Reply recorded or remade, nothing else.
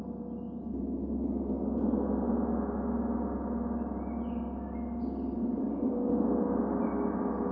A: recorded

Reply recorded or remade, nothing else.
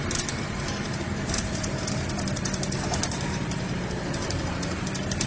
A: remade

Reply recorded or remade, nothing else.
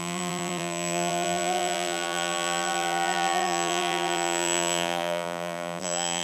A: remade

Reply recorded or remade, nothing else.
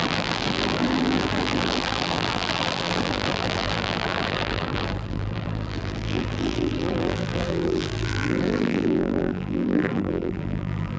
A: remade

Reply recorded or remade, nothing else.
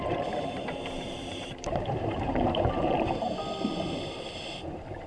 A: remade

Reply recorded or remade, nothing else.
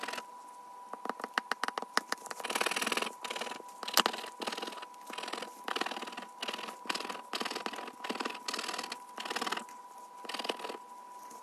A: recorded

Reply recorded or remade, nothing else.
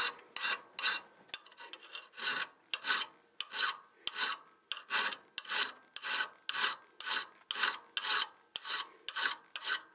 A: recorded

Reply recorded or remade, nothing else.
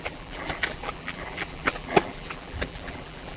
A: remade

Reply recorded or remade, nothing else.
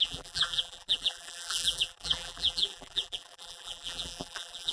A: remade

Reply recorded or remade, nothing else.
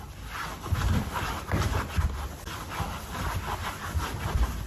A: remade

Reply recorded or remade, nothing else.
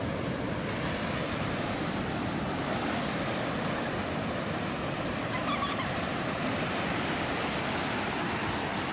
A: remade